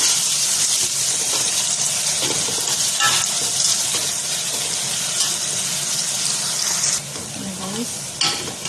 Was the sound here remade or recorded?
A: recorded